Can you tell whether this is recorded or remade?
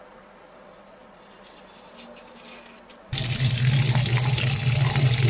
recorded